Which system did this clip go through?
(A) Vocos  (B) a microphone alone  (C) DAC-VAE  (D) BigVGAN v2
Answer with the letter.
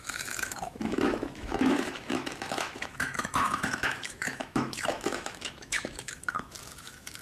C